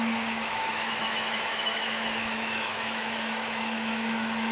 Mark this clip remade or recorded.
remade